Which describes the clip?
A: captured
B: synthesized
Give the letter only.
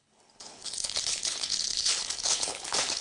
B